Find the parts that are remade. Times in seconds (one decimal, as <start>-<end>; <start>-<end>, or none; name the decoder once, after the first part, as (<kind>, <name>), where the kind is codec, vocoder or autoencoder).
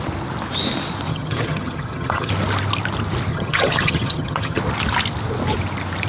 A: 1.1-2.3 (vocoder, HiFi-GAN); 3.3-4.6